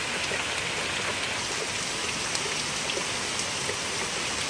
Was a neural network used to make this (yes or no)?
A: no